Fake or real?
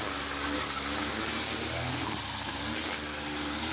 real